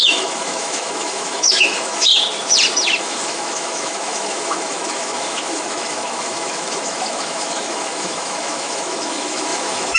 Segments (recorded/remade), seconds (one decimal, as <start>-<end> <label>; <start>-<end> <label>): 0.0-2.1 remade; 2.1-3.0 recorded; 3.0-10.0 remade